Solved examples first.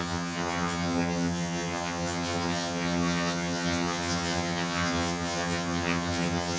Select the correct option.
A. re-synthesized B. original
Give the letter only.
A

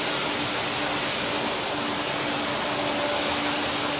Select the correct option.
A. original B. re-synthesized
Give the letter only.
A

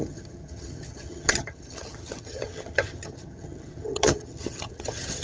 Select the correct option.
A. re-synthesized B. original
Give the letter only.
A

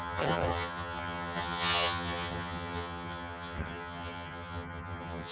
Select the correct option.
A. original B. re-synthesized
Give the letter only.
B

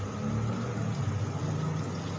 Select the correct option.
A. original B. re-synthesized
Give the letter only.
A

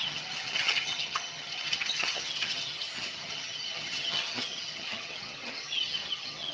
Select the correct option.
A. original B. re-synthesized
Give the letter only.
B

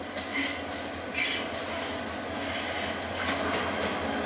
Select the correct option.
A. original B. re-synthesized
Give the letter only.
A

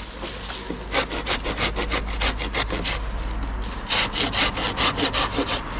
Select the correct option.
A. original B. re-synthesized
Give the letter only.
A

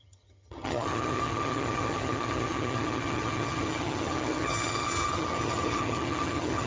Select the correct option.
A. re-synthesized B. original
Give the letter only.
A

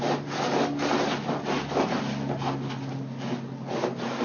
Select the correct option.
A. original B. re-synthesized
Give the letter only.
A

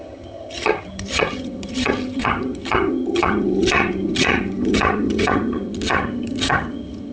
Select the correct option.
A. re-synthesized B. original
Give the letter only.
A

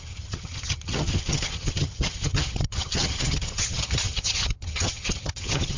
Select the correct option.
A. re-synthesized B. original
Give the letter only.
A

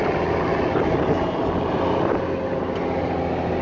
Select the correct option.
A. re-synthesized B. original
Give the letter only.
B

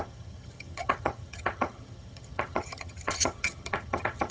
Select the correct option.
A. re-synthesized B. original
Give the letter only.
A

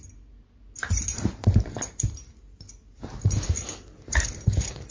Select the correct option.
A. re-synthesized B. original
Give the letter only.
B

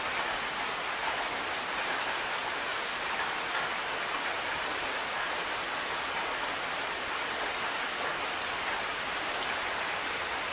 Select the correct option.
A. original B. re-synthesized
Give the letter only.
A